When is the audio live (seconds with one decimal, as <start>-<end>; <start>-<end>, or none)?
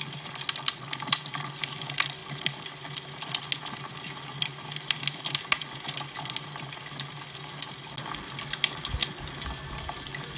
0.0-10.4